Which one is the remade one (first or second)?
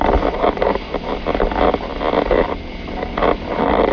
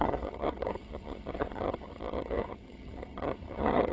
second